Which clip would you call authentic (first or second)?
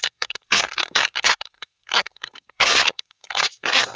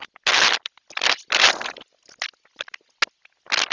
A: second